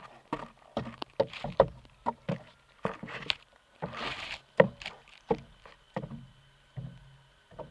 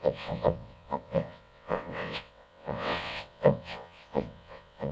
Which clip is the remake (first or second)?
second